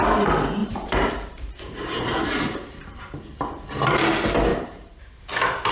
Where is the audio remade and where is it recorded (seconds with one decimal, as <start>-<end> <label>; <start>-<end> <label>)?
0.0-0.6 recorded; 0.6-4.0 remade; 4.0-4.5 recorded; 4.5-5.2 remade; 5.2-5.7 recorded